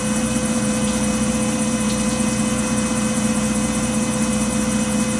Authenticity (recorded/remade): recorded